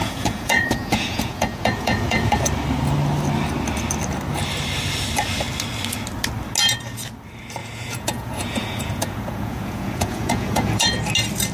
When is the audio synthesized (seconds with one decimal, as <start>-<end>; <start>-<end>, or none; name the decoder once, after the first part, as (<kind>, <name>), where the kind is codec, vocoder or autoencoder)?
0.0-2.4 (vocoder, Vocos); 7.6-11.0